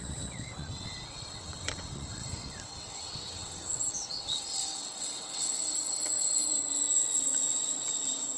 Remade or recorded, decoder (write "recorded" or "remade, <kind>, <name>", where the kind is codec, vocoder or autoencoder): remade, vocoder, WaveNeXt